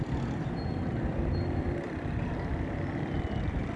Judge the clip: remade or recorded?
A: recorded